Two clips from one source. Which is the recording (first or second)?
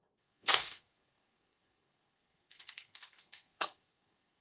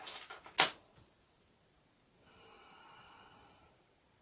second